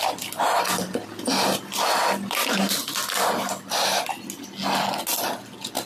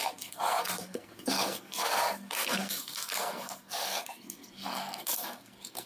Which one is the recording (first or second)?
first